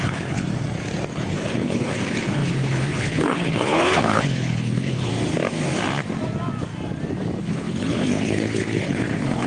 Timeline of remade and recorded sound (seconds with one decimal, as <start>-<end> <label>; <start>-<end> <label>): 0.0-0.5 remade; 0.5-1.1 recorded; 1.1-5.1 remade; 5.1-7.4 recorded; 7.4-9.5 remade